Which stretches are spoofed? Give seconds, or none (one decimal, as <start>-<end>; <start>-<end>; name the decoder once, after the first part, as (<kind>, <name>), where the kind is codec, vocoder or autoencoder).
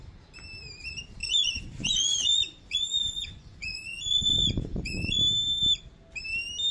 1.2-5.2 (vocoder, Vocos)